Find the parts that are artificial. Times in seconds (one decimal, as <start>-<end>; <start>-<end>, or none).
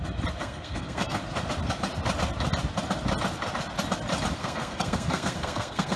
0.4-1.2; 4.4-6.0